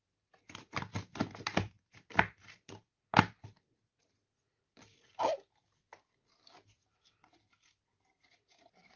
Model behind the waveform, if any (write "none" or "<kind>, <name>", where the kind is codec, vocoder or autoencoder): none